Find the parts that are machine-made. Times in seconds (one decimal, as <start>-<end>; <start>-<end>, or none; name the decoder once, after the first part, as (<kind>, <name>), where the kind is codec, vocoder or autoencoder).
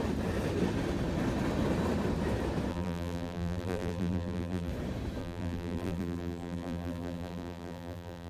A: 2.7-4.7 (vocoder, BigVGAN v2); 5.2-8.3